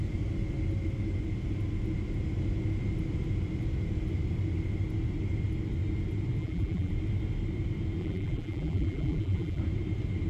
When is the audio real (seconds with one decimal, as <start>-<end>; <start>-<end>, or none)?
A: 0.0-6.4; 6.9-8.0; 9.6-10.3